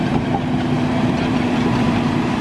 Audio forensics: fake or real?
fake